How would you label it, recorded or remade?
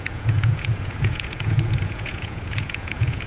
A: remade